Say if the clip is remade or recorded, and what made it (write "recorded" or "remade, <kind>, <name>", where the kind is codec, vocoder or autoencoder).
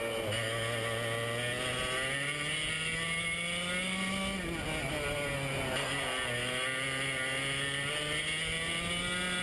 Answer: recorded